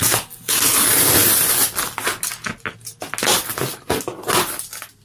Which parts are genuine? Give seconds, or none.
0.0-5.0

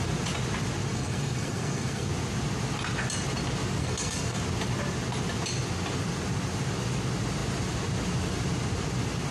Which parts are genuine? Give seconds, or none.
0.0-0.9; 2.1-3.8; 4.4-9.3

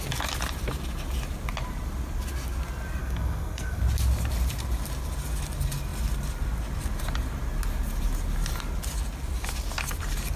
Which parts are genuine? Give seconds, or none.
0.0-3.0; 3.8-10.4